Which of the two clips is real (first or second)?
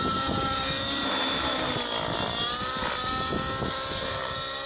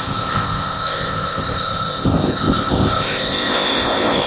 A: first